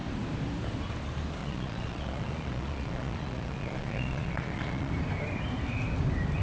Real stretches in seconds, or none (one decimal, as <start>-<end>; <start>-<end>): 0.0-1.4; 4.9-6.4